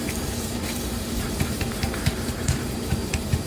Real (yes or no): no